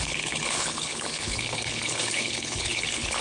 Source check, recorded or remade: remade